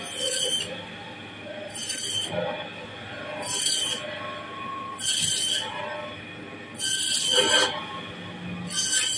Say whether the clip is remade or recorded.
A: recorded